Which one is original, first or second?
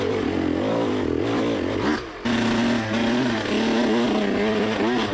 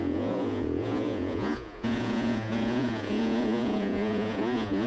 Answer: first